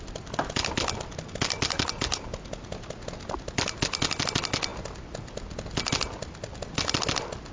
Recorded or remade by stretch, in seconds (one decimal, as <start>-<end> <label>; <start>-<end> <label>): 0.0-7.5 recorded